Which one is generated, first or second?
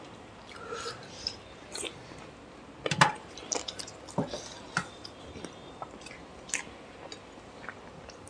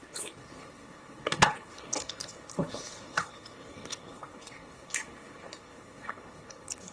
second